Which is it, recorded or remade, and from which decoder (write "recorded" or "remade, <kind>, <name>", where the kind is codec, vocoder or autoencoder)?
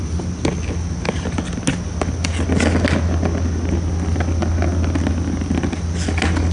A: recorded